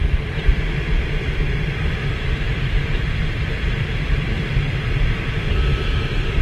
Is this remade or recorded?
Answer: remade